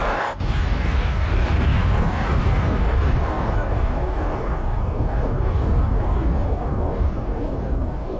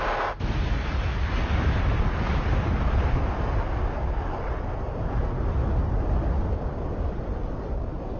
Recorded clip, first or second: second